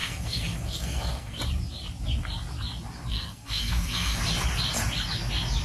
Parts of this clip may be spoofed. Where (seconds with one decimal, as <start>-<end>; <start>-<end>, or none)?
0.0-1.4; 3.1-4.2